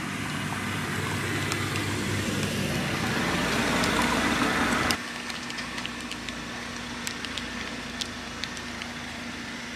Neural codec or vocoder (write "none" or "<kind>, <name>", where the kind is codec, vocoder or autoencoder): none